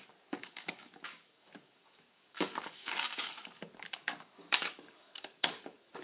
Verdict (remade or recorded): remade